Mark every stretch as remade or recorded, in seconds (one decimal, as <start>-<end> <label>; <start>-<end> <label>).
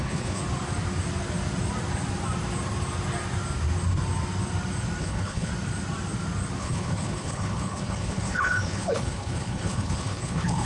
0.0-0.4 remade; 0.4-5.0 recorded; 5.0-5.5 remade; 5.5-6.6 recorded; 6.6-10.6 remade